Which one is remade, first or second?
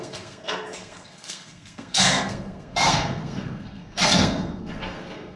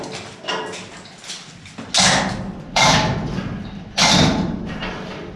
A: first